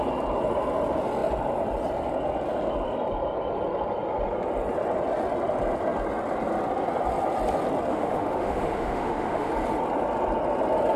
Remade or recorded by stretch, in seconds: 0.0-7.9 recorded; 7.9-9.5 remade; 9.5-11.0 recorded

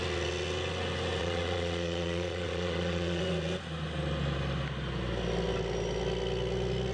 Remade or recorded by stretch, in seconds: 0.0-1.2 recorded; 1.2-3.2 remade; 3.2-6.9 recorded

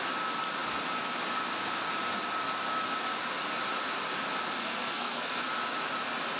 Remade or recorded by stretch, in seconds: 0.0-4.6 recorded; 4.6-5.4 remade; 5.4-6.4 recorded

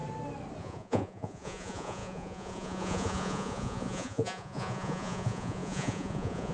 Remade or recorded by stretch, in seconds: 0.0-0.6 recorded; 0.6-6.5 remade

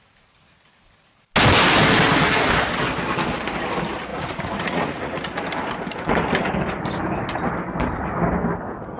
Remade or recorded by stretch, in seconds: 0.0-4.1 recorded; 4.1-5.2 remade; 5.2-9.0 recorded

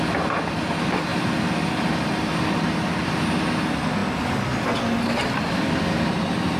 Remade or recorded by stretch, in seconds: 0.0-6.6 recorded

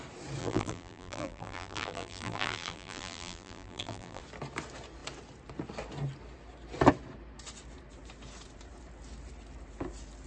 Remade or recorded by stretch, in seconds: 0.0-0.4 recorded; 0.4-4.2 remade; 4.2-10.3 recorded